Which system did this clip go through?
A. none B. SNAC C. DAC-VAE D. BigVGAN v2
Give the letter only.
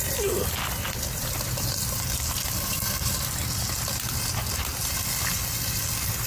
A